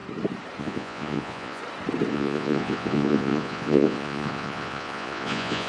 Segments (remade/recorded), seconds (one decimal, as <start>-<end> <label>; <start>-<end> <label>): 0.0-0.6 recorded; 0.6-1.6 remade; 1.6-2.1 recorded; 2.1-5.7 remade